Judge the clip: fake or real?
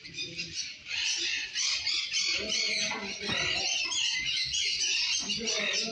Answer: real